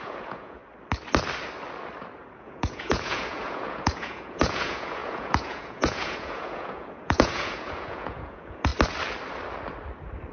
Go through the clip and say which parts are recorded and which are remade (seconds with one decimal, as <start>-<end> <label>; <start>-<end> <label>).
0.0-0.6 remade; 0.6-2.4 recorded; 2.4-8.7 remade; 8.7-10.3 recorded